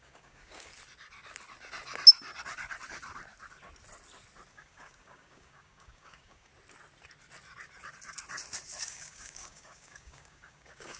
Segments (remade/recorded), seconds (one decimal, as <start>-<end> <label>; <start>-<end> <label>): 0.0-0.7 remade; 0.7-4.5 recorded; 4.5-6.5 remade; 6.5-8.8 recorded; 8.8-11.0 remade